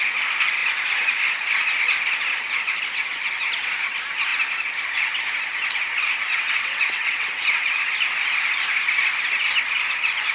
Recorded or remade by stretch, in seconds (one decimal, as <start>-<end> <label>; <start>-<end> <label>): 0.0-6.3 recorded; 6.3-7.3 remade; 7.3-10.3 recorded